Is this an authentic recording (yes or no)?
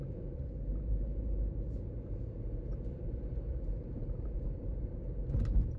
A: no